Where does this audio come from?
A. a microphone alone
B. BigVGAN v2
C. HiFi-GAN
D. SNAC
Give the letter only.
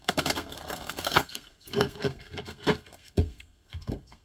D